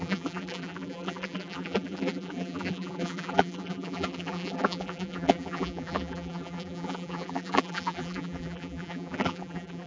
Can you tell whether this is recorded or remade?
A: remade